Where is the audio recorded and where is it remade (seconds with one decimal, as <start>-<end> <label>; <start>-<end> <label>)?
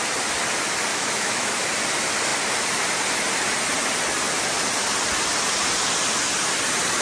0.0-0.9 recorded; 0.9-1.5 remade; 1.5-7.0 recorded